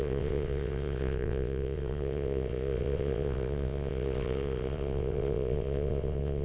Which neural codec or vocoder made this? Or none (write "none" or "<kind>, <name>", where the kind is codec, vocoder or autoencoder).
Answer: vocoder, WaveNeXt